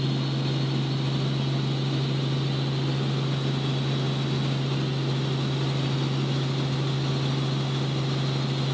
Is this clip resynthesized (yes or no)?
no